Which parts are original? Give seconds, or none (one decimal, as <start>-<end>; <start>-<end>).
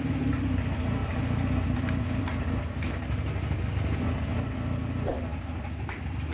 0.0-6.3